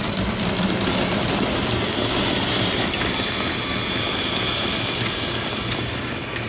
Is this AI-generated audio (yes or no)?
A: no